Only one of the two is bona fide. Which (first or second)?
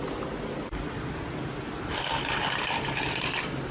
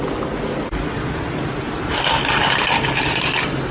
second